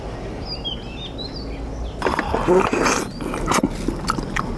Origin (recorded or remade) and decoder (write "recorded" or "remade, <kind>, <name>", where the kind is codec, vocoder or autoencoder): recorded